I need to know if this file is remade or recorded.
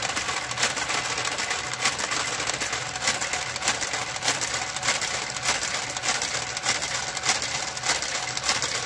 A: recorded